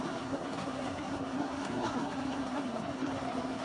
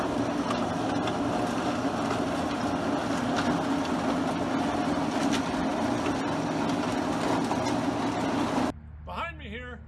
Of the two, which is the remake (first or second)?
first